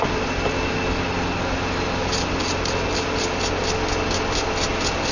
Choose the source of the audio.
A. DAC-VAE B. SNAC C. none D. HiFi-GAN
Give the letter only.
C